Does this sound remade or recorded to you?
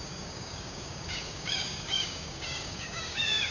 remade